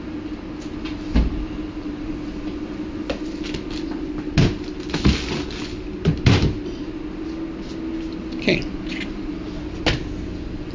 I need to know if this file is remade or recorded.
recorded